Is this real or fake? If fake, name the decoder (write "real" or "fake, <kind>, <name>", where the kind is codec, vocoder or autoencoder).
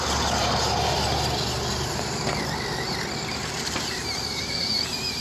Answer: fake, vocoder, BigVGAN v2